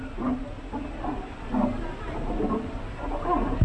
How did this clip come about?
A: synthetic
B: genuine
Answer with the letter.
B